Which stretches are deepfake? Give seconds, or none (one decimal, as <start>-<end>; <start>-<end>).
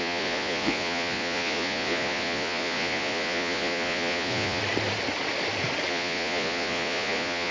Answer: 0.0-4.6; 5.9-7.5